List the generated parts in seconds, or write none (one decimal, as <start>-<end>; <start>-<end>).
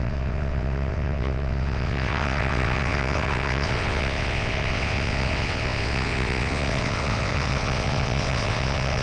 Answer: 0.0-9.0